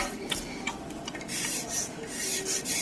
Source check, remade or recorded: remade